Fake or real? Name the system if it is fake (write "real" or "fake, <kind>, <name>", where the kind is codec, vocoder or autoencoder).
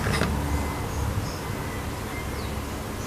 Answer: real